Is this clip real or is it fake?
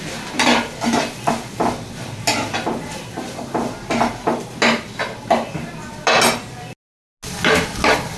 real